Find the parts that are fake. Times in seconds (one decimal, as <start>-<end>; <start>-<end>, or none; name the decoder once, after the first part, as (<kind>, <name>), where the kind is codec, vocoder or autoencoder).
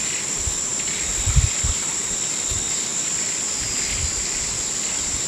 none